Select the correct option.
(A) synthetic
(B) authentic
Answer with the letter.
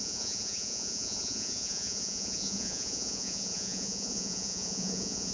A